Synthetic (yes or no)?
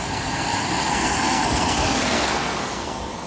yes